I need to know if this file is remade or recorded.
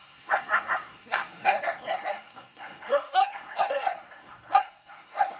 remade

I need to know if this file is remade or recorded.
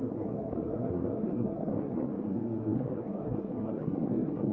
remade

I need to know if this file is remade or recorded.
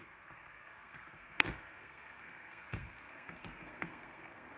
remade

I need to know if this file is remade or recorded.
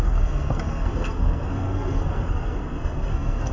remade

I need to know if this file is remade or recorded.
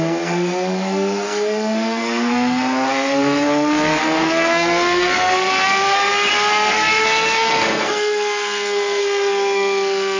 remade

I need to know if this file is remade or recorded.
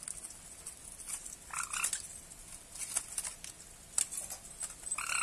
recorded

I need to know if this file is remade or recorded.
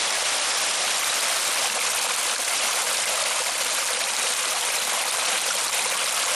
recorded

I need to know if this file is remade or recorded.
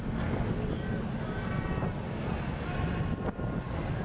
recorded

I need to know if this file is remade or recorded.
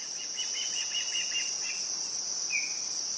recorded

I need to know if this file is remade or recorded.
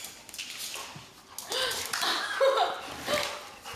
recorded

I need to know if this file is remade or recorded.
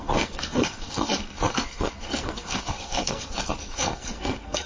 remade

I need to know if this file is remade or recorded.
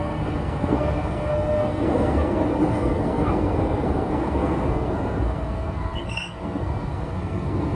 remade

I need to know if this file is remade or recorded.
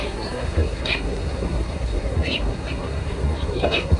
remade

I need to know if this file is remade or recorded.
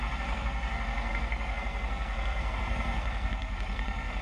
remade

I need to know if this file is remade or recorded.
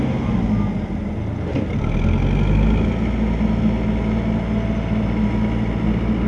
recorded